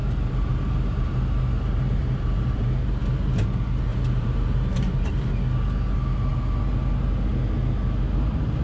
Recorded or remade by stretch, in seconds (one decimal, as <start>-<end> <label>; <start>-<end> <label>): 0.0-3.0 remade; 3.0-3.9 recorded; 3.9-5.3 remade; 5.3-8.6 recorded